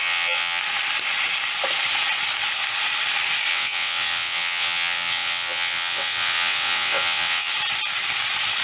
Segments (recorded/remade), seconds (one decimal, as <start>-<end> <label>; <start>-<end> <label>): 0.0-0.6 remade; 0.6-3.5 recorded; 3.5-7.5 remade; 7.5-8.6 recorded